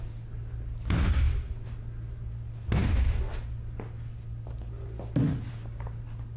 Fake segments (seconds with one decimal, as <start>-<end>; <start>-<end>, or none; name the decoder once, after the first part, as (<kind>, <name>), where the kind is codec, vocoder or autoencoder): none